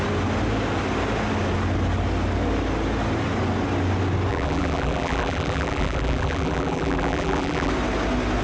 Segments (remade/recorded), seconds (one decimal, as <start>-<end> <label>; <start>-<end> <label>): 0.0-4.3 recorded; 4.3-7.7 remade; 7.7-8.4 recorded